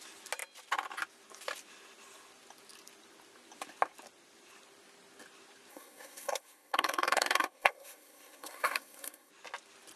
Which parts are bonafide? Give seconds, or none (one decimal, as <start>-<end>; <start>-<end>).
0.0-5.7; 9.3-10.0